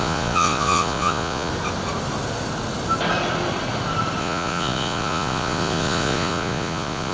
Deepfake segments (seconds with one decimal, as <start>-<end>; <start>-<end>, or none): 0.0-1.5; 4.2-7.1